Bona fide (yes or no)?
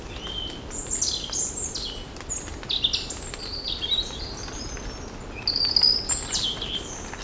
yes